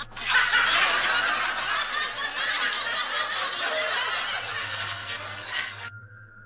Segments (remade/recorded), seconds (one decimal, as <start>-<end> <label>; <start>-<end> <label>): 0.0-4.6 recorded; 4.6-6.5 remade